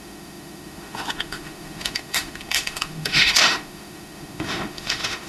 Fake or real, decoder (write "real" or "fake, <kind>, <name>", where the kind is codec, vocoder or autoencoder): fake, autoencoder, DAC-VAE